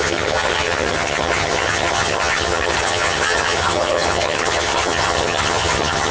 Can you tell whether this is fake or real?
fake